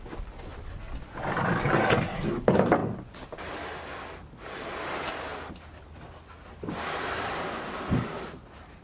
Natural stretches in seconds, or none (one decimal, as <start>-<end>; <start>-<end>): 0.0-8.8